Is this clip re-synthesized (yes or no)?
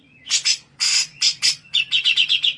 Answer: yes